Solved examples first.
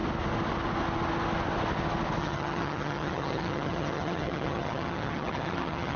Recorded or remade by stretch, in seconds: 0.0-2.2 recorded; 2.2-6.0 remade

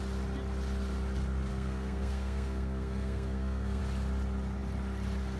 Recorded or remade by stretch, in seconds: 0.0-1.5 recorded; 1.5-3.8 remade; 3.8-5.4 recorded

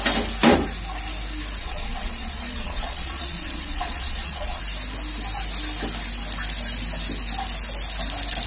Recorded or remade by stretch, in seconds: 0.0-1.6 recorded; 1.6-4.6 remade; 4.6-8.5 recorded

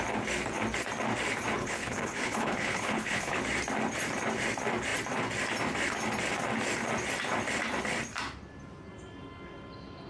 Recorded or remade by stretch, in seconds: 0.0-1.6 recorded; 1.6-3.4 remade; 3.4-10.1 recorded

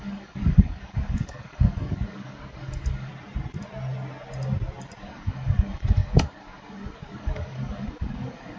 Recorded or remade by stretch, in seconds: 0.0-3.1 remade; 3.1-5.0 recorded; 5.0-8.6 remade

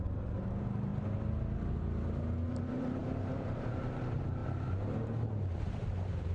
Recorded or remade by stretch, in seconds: 0.0-0.9 remade; 0.9-2.5 recorded; 2.5-4.4 remade; 4.4-5.6 recorded; 5.6-6.3 remade

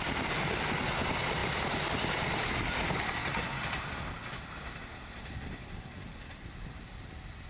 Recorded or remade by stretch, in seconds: 0.0-7.5 recorded

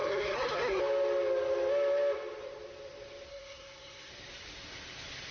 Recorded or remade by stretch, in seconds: 0.0-0.8 remade; 0.8-3.3 recorded; 3.3-4.1 remade; 4.1-5.3 recorded